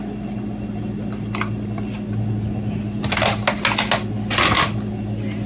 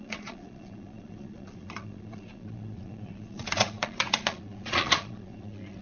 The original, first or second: first